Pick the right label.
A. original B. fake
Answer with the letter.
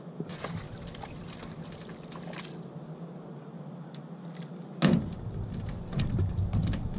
A